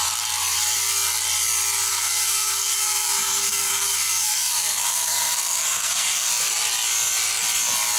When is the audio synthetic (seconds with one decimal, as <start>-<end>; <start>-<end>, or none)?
1.9-6.3